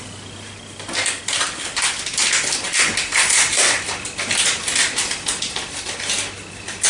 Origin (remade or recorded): recorded